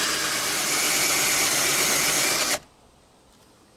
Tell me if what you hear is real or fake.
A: real